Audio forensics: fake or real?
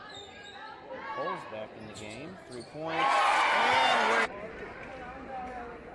real